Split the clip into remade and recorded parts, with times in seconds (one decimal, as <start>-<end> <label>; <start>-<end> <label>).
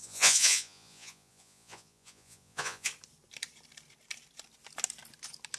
0.0-2.9 remade; 2.9-5.6 recorded